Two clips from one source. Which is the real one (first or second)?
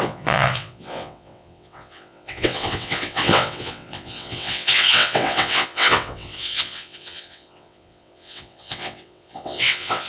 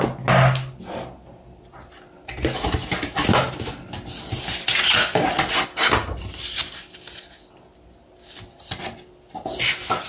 second